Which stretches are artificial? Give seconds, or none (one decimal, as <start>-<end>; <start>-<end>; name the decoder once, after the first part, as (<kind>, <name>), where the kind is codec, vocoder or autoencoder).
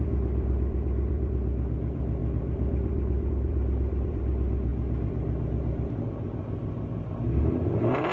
0.0-8.1 (vocoder, BigVGAN v2)